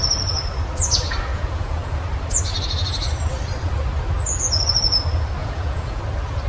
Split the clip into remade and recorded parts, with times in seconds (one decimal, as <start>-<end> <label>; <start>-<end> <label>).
0.0-1.3 recorded; 1.3-1.9 remade; 1.9-5.4 recorded; 5.4-6.0 remade; 6.0-6.5 recorded